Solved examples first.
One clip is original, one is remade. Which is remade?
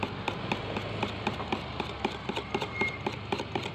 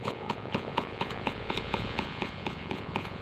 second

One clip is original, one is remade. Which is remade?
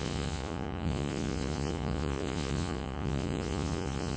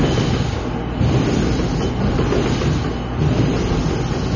first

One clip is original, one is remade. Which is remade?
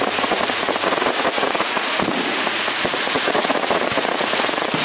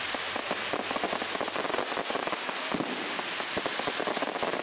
first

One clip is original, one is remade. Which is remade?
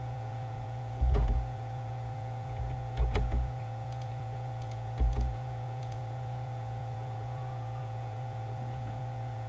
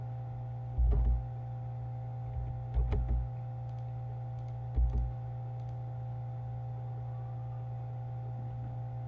first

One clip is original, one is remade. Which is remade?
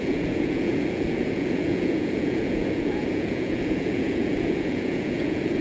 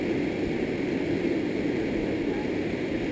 first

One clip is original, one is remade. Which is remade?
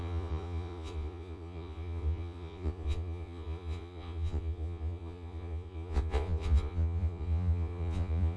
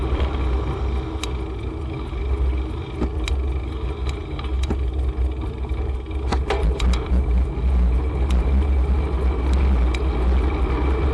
first